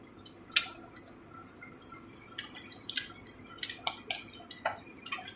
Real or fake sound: real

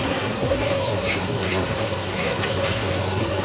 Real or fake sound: fake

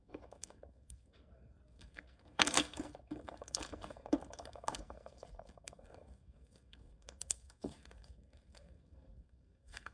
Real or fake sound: fake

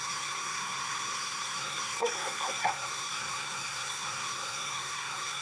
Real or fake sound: fake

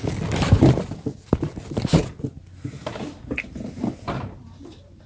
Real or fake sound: real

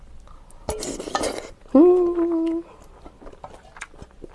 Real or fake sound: real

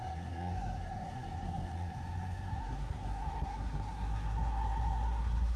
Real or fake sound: fake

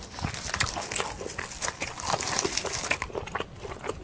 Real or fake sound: real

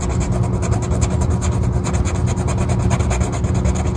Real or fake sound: real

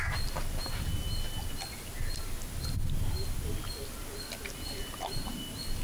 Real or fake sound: real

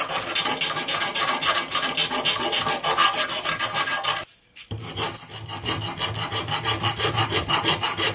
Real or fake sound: real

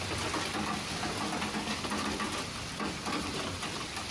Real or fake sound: real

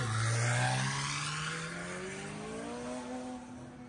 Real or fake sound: real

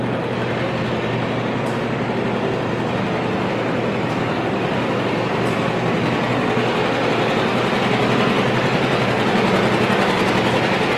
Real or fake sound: real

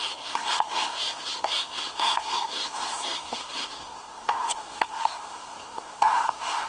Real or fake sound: fake